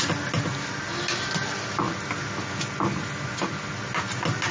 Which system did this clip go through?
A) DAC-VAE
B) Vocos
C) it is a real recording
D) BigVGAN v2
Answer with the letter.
C